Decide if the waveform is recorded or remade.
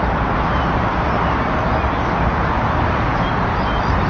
recorded